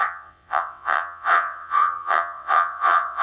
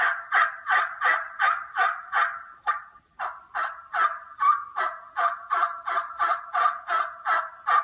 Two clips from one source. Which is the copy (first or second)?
first